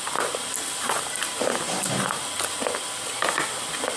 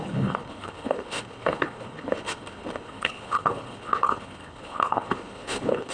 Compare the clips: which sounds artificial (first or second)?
second